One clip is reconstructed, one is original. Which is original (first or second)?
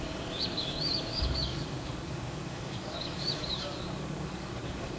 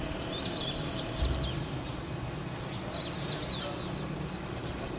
second